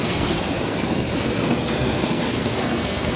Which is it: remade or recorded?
remade